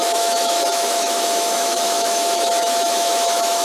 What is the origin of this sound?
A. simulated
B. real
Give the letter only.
A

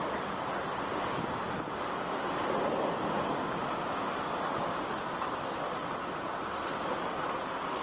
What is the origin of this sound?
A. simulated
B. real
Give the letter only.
B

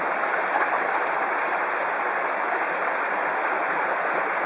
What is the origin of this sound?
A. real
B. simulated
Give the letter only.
A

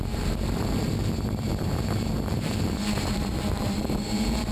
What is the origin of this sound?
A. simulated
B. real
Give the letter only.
A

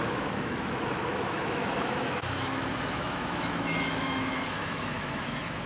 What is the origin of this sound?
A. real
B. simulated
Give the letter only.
B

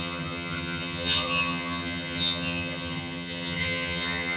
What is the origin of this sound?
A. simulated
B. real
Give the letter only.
A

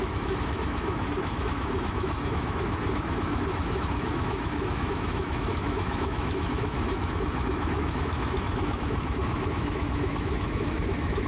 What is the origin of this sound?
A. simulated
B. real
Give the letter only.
A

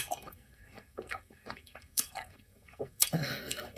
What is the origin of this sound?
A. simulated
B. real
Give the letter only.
A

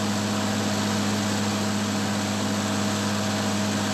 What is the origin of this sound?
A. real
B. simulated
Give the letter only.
A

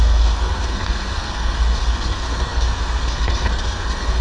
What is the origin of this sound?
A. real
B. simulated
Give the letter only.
B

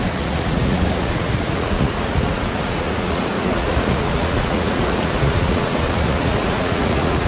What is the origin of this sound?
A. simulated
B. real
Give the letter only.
A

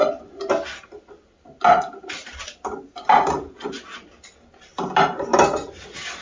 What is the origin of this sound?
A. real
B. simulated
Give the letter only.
A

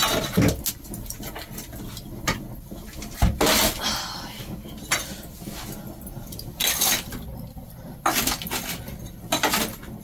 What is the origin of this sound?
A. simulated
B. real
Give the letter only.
B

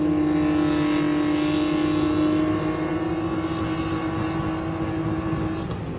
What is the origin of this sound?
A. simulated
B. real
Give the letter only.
B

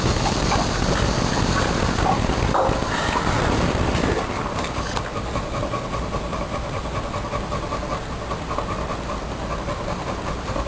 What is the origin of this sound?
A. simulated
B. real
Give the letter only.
B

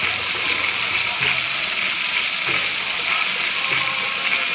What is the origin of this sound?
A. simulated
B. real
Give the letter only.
B